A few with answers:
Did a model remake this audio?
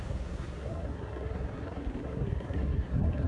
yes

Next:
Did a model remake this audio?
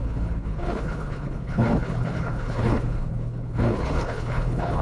yes